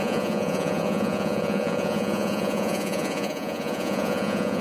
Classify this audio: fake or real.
fake